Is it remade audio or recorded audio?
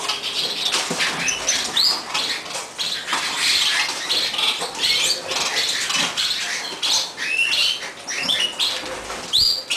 recorded